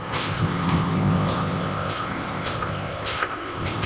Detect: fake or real fake